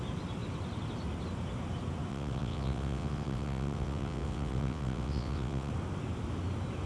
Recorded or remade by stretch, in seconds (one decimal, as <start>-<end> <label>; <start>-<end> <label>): 0.0-2.1 recorded; 2.1-5.7 remade; 5.7-6.9 recorded